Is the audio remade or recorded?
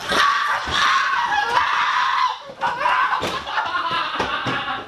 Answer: recorded